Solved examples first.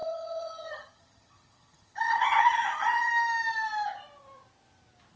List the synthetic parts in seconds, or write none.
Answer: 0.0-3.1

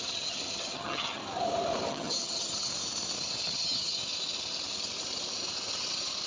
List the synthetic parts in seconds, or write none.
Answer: 0.0-1.2; 1.9-2.7; 3.5-4.0

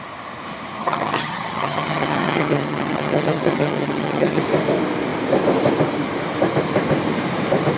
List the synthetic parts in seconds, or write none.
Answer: 0.8-4.4

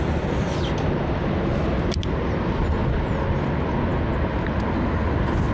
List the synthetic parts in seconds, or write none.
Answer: none

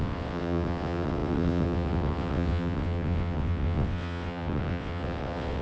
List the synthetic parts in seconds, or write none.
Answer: 0.0-5.6

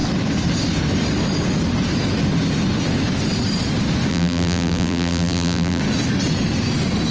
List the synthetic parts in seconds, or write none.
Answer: 4.1-5.8